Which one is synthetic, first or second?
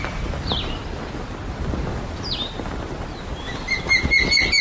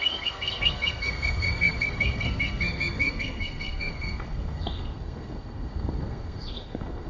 second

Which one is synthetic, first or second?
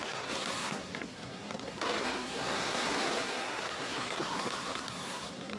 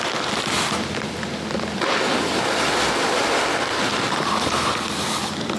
first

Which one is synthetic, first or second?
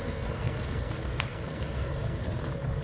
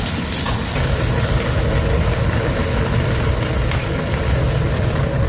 first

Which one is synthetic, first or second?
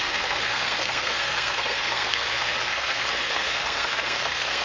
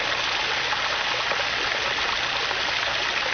first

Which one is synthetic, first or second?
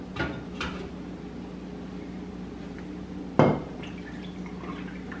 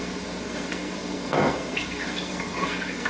second